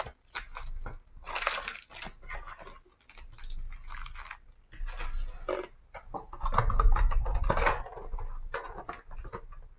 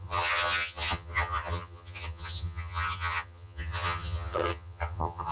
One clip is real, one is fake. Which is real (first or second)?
first